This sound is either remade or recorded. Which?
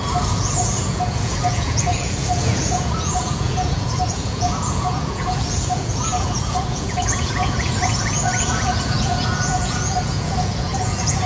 remade